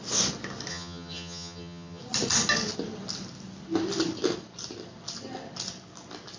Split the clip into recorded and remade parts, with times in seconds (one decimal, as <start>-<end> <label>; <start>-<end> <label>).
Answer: 0.0-0.7 recorded; 0.7-2.0 remade; 2.0-6.4 recorded